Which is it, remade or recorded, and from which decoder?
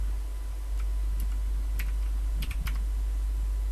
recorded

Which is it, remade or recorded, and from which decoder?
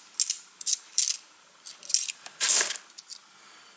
recorded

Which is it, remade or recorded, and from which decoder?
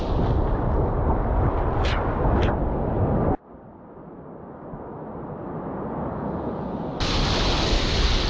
recorded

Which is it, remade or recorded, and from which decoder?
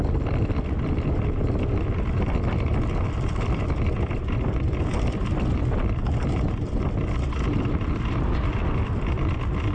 recorded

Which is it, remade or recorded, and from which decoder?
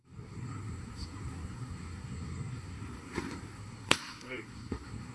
remade, codec, SNAC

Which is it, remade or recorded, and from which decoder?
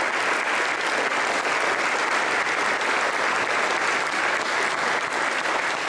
recorded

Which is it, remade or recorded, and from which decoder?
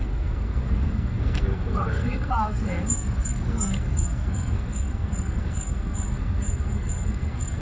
remade, codec, SNAC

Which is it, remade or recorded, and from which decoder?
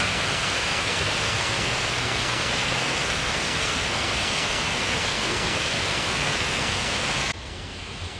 remade, codec, SNAC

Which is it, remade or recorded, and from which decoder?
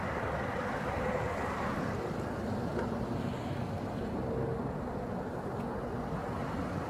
recorded